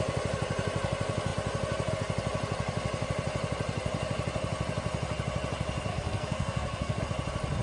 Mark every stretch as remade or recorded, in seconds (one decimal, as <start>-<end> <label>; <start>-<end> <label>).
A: 0.0-5.9 recorded; 5.9-7.0 remade; 7.0-7.6 recorded